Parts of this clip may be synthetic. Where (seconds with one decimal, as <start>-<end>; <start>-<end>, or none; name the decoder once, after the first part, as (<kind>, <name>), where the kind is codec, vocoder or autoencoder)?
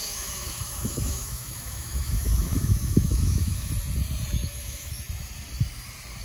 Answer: 0.0-3.7 (autoencoder, DAC-VAE); 4.4-4.9